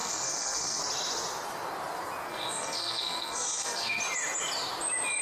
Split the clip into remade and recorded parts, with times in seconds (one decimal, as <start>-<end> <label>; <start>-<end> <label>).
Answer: 0.0-0.8 remade; 0.8-2.3 recorded; 2.3-4.0 remade; 4.0-5.2 recorded